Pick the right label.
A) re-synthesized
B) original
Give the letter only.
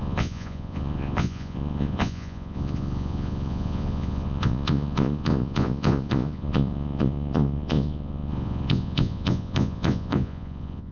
A